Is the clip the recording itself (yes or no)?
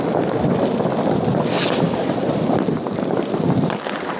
yes